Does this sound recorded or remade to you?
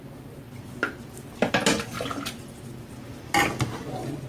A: recorded